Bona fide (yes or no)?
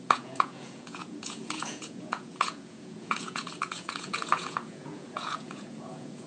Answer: no